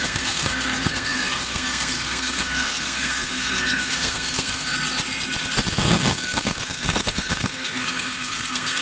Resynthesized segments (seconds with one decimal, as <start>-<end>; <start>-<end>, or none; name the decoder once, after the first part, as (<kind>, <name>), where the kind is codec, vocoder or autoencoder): 0.0-4.7 (codec, SNAC); 5.7-8.8